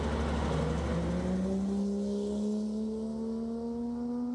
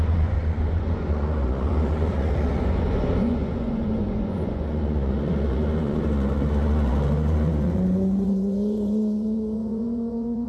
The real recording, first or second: first